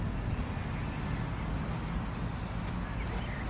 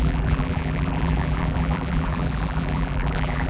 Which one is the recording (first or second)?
first